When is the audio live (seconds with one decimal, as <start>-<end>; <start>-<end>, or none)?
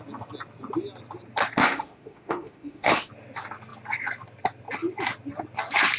0.0-1.6; 3.1-6.0